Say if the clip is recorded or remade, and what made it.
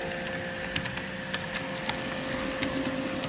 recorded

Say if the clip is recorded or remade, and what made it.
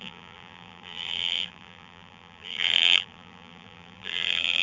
remade, vocoder, BigVGAN v2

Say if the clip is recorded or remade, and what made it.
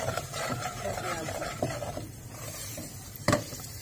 remade, vocoder, BigVGAN v2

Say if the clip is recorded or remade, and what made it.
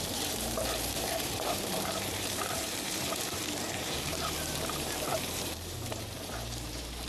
remade, vocoder, BigVGAN v2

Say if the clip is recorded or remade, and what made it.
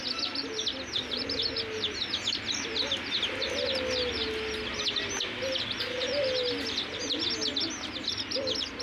recorded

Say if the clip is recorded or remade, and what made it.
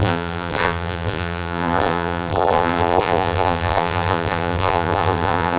remade, vocoder, BigVGAN v2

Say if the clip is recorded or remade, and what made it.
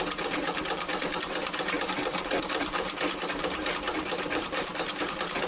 remade, vocoder, BigVGAN v2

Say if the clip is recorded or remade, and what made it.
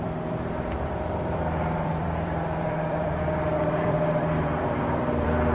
remade, vocoder, BigVGAN v2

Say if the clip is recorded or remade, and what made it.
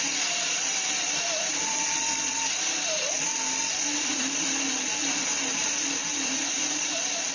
remade, vocoder, BigVGAN v2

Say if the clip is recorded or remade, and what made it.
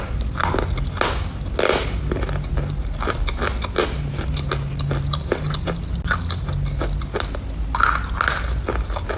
recorded